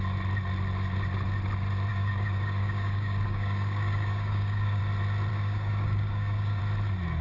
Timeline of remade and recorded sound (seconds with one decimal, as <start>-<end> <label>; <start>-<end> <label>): 0.0-1.9 recorded; 1.9-4.8 remade; 4.8-5.3 recorded; 5.3-6.6 remade; 6.6-7.2 recorded